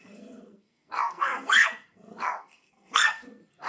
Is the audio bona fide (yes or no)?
no